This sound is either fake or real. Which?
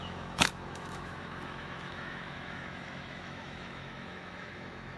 fake